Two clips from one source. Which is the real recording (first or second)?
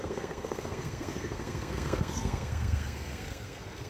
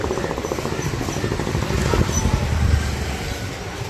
second